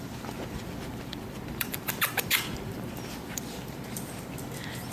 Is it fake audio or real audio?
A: fake